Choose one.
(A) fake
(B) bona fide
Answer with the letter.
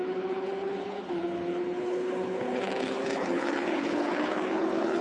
A